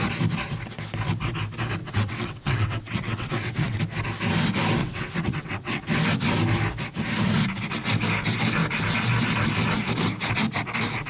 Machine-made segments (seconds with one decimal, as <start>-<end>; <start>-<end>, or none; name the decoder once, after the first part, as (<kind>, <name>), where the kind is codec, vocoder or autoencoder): 1.8-3.8 (vocoder, WaveNeXt); 4.8-5.9

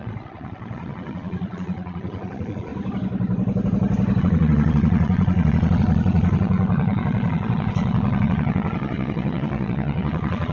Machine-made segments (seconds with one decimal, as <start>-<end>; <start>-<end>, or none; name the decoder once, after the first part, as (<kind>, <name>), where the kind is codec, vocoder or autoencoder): 0.0-2.7 (vocoder, Vocos); 4.2-10.5